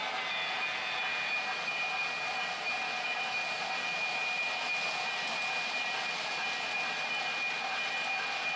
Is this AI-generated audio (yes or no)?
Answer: no